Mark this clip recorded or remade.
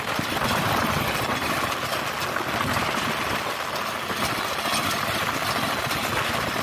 recorded